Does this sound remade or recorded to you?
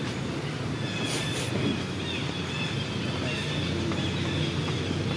recorded